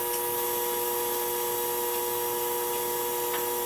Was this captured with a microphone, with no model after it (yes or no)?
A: yes